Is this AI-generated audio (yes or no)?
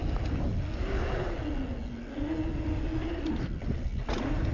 no